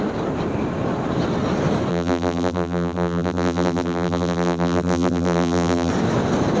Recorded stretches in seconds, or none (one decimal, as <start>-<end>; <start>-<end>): 0.0-1.9; 5.9-6.6